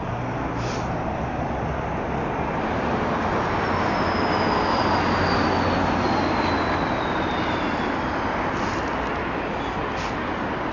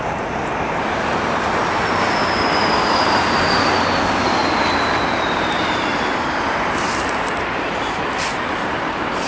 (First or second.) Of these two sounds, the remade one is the second